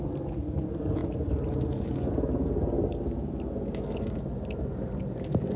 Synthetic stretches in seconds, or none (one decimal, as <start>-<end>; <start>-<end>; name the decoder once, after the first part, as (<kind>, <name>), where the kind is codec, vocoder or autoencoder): none